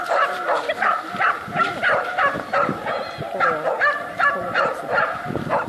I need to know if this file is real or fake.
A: real